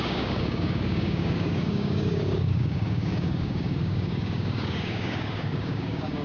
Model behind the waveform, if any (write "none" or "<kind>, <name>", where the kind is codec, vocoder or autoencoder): codec, DAC